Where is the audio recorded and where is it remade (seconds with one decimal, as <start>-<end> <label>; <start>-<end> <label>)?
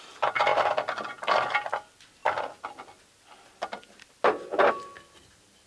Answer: 0.0-0.5 recorded; 0.5-1.1 remade; 1.1-5.7 recorded